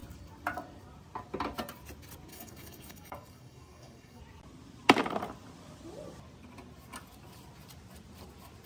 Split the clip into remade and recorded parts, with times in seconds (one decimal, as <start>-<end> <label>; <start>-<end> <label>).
0.0-2.3 recorded; 2.3-4.2 remade; 4.2-8.7 recorded